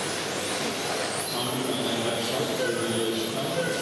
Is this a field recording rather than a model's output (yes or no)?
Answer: yes